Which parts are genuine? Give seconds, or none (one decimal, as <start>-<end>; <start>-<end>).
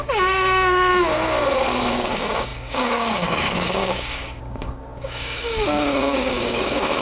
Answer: 0.9-1.9